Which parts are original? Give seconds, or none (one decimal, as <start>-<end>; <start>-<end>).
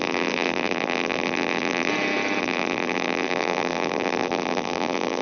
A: 1.9-2.4